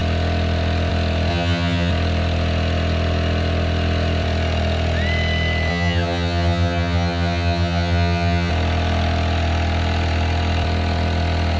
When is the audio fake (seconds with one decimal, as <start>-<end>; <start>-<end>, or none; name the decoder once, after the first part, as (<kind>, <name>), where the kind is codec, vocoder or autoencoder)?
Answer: 1.3-1.9 (vocoder, HiFi-GAN); 5.7-8.5